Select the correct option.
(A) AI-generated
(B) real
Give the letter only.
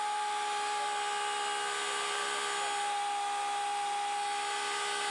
B